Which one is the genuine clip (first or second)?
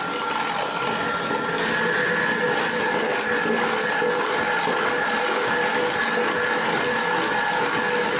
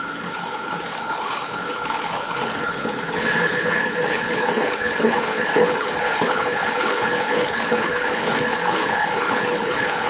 first